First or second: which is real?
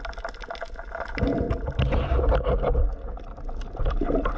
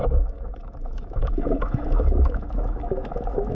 first